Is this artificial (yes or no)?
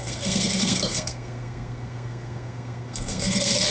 yes